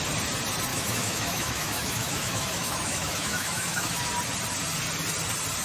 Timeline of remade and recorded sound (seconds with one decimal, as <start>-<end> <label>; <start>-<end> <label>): 0.0-0.7 recorded; 0.7-4.1 remade; 4.1-5.6 recorded